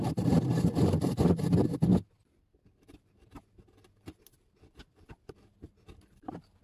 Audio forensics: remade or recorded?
remade